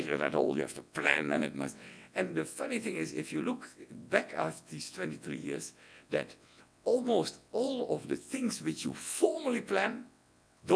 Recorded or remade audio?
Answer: remade